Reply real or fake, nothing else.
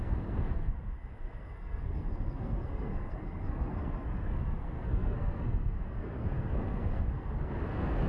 fake